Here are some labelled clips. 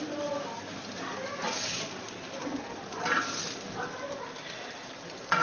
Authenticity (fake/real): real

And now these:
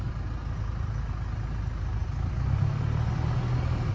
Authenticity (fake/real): real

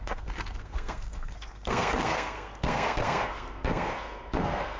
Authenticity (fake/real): fake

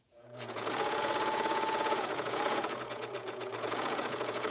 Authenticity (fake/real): fake